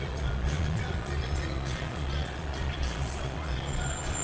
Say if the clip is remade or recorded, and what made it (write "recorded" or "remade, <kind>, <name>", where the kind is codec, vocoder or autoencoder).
remade, vocoder, Vocos